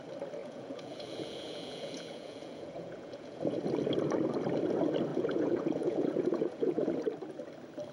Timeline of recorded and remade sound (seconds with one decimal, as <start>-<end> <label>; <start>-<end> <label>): 0.0-0.4 recorded; 0.4-3.4 remade; 3.4-5.1 recorded; 5.1-6.9 remade; 6.9-7.9 recorded